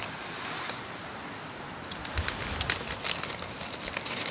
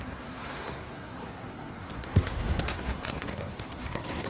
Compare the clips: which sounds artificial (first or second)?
second